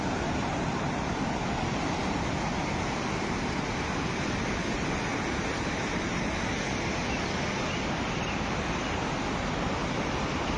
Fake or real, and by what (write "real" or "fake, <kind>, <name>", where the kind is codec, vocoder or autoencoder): real